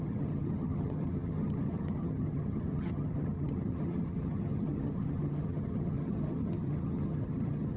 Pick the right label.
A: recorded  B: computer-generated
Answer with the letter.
B